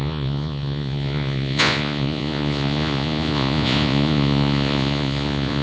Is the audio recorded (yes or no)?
no